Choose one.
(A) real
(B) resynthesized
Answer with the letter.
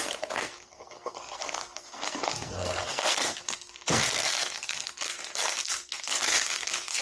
B